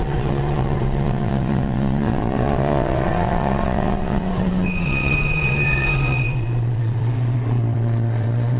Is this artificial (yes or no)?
yes